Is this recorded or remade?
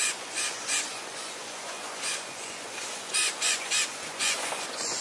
remade